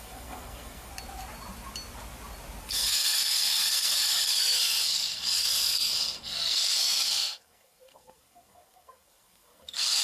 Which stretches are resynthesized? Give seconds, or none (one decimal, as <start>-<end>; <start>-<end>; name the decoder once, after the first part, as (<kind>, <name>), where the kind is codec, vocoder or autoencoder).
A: 0.0-0.9 (codec, SNAC); 2.6-10.0

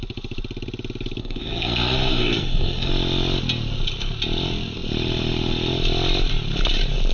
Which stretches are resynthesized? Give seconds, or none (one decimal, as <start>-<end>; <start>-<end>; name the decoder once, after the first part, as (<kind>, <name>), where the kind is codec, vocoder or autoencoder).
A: 1.2-2.9 (codec, SNAC)

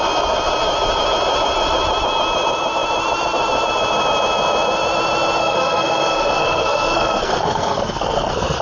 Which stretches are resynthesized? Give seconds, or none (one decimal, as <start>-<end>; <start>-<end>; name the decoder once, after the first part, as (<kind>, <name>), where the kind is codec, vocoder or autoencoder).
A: 5.4-8.6 (codec, SNAC)

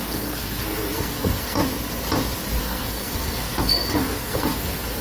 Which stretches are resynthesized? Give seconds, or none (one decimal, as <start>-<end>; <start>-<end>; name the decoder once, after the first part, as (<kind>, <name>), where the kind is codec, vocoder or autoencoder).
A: 0.0-1.6 (codec, SNAC); 2.6-5.0

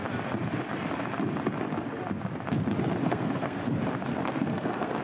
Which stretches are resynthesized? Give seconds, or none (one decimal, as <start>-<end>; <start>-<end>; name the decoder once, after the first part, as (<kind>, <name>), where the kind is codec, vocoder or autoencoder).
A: 3.0-3.6 (codec, SNAC); 4.1-5.0